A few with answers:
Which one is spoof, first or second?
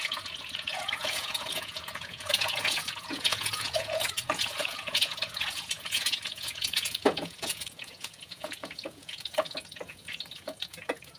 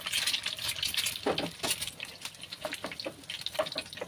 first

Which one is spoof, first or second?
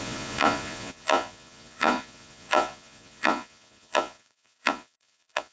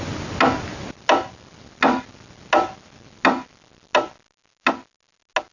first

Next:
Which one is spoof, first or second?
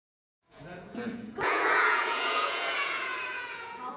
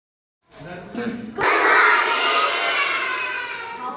first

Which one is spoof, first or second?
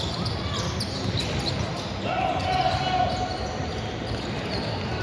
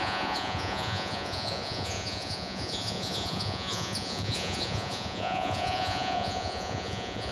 second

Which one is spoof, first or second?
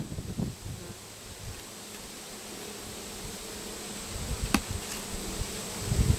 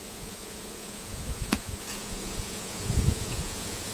second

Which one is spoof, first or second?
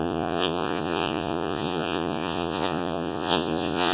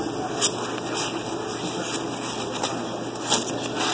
first